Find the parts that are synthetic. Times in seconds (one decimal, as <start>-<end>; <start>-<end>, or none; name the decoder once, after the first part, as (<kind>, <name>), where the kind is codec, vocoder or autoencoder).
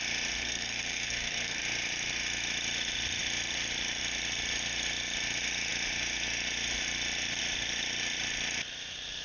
0.4-1.6 (codec, SNAC)